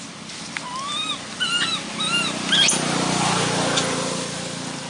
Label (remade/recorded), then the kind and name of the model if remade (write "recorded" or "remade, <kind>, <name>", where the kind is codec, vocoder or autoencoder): recorded